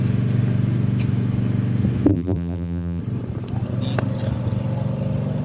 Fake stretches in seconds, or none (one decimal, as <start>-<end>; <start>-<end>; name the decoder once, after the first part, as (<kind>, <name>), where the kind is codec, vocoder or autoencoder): 2.1-3.0 (vocoder, BigVGAN v2)